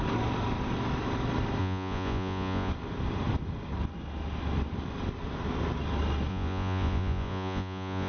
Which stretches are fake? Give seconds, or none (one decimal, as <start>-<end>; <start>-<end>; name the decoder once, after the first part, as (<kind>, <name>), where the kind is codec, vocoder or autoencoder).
1.6-2.7 (vocoder, Vocos); 6.3-8.1